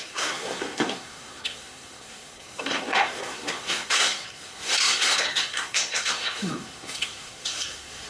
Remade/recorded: remade